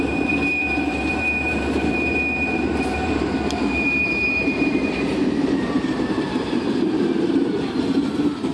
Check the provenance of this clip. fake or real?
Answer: fake